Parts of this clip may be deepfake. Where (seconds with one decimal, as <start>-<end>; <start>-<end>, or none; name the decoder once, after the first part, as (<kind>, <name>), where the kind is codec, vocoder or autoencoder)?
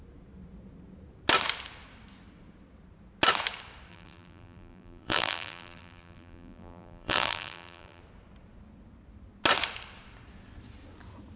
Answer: 3.9-8.0 (vocoder, BigVGAN v2)